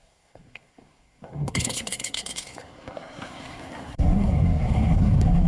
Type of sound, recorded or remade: remade